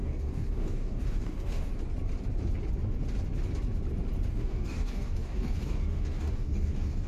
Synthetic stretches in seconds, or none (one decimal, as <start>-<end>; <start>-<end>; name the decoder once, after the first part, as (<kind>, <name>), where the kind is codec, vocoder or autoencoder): 0.0-1.7 (codec, DAC); 4.3-7.1